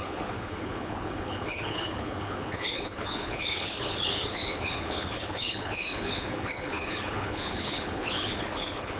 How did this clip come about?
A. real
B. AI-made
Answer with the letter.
B